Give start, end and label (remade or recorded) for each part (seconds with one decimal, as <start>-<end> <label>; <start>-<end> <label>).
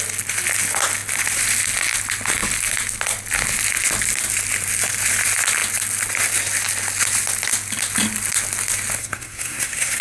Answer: 0.0-9.0 recorded; 9.0-10.0 remade